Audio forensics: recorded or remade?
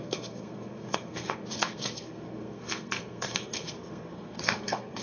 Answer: remade